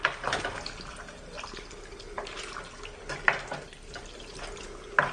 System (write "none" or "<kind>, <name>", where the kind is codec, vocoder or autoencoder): none